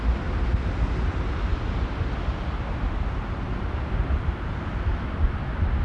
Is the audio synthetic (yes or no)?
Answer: no